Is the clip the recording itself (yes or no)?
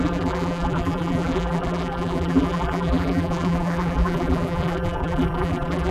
no